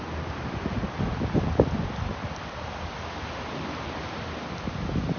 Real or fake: real